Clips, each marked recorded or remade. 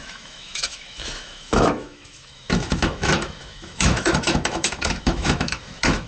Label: remade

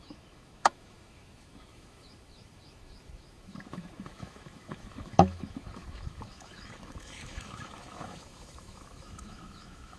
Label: remade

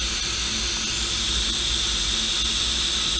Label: recorded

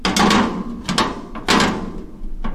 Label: recorded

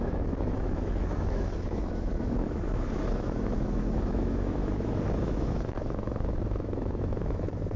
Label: remade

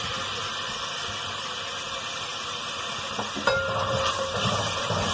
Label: recorded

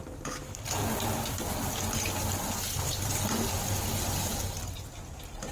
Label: recorded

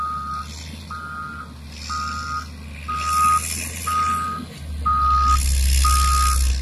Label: recorded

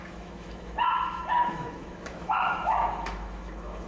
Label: remade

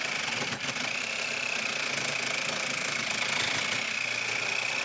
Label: recorded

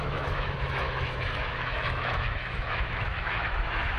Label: remade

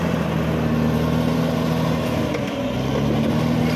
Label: recorded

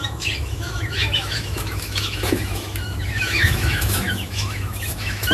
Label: remade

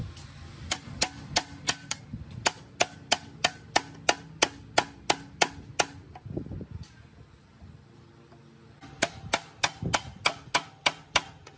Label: recorded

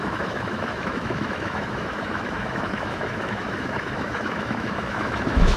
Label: remade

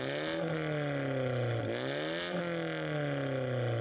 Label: recorded